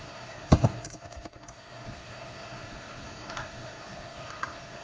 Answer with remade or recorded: remade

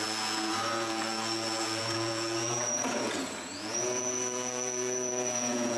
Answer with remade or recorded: remade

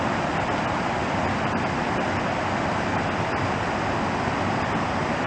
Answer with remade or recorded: recorded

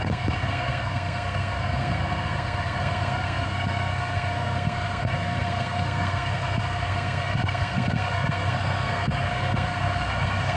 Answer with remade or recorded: remade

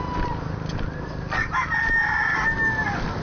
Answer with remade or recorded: recorded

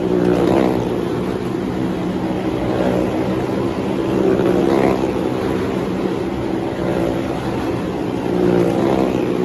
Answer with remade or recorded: recorded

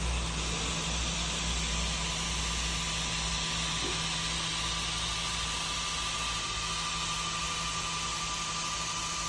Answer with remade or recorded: recorded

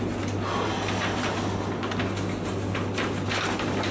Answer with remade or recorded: recorded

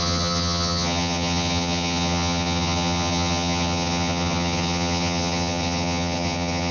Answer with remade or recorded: remade